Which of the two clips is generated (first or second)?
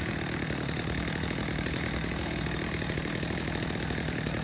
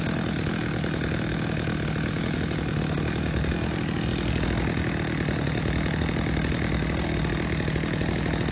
first